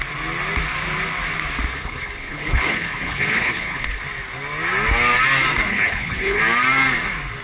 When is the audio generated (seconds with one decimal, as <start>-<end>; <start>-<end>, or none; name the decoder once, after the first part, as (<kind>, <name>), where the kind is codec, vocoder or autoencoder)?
1.7-4.0 (codec, HILCodec); 5.7-6.4